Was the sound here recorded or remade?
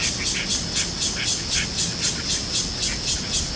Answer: recorded